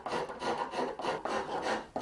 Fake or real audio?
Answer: real